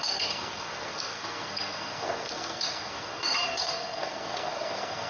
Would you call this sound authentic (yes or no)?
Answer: no